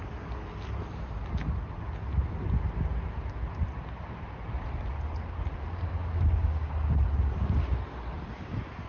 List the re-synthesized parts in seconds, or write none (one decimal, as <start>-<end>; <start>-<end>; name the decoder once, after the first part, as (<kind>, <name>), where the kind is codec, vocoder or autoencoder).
6.0-6.7 (codec, DAC)